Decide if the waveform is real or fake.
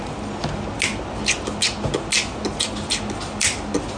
real